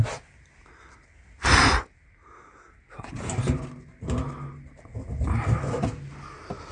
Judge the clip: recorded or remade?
recorded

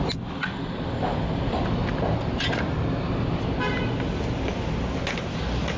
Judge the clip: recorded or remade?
recorded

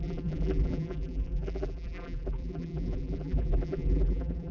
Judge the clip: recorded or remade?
remade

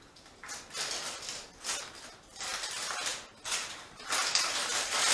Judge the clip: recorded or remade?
recorded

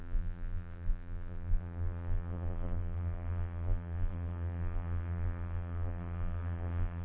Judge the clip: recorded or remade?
remade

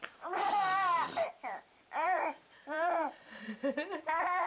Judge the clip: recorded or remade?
remade